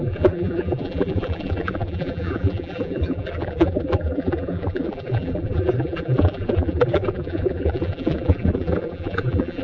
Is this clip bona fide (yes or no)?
no